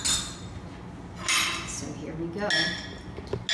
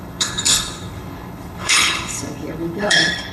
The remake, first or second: second